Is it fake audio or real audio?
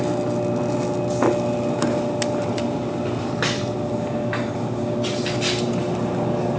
real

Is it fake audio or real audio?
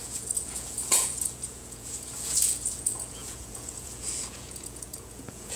fake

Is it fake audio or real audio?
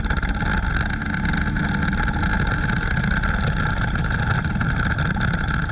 real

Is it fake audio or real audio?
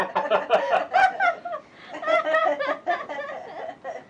real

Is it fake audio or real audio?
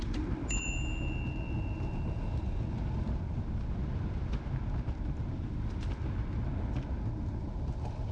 real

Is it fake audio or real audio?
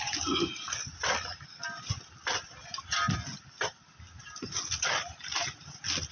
real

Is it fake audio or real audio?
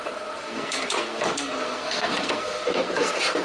fake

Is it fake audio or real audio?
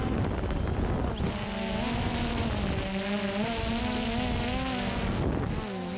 real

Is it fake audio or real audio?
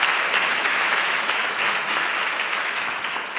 fake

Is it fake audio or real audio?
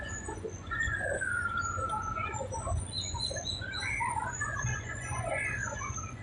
fake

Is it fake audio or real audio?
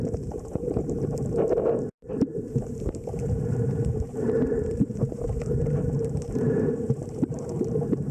fake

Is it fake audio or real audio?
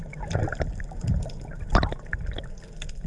real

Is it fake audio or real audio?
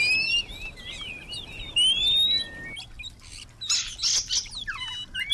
real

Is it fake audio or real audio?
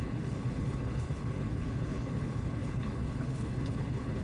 fake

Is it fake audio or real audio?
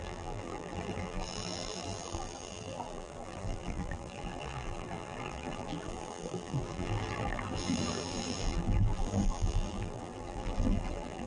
fake